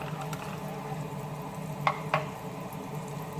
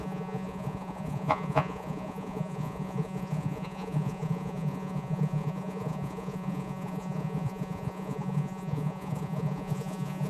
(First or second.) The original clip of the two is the first